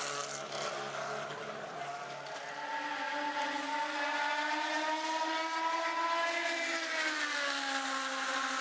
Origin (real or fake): real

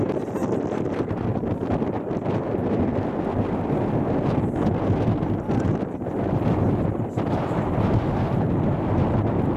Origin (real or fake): real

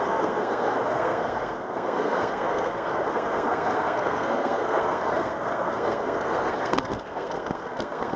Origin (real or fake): fake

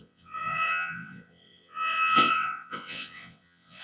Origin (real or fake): fake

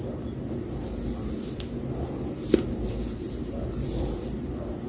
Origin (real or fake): real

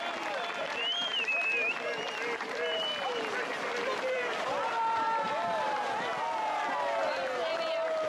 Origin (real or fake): real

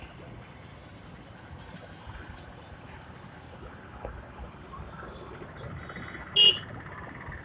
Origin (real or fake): real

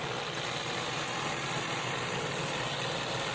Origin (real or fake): real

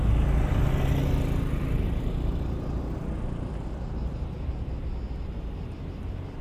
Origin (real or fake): real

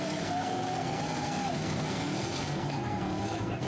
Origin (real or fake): fake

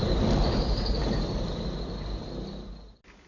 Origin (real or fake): real